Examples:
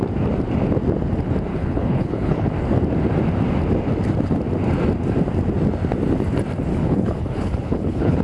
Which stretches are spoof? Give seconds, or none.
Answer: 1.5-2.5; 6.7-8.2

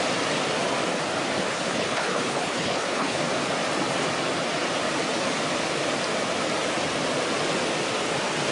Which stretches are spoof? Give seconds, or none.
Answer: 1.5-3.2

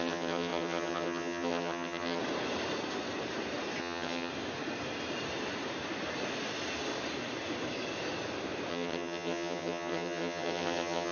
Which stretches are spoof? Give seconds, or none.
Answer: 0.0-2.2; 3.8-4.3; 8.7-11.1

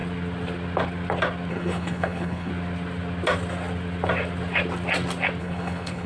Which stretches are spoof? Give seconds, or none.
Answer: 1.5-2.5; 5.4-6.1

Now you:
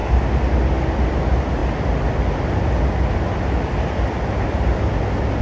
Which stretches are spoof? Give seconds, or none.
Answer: none